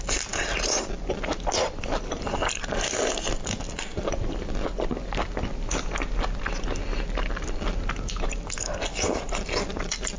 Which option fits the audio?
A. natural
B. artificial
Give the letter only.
A